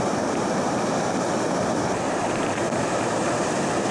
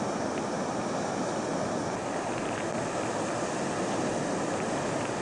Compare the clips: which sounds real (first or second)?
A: second